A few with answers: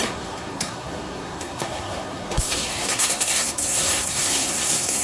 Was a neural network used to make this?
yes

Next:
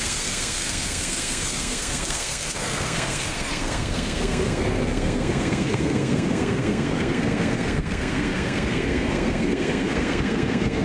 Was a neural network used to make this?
yes